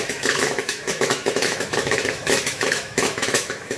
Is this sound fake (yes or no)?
yes